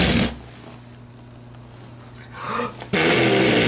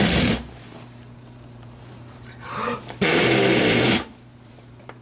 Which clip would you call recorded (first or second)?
first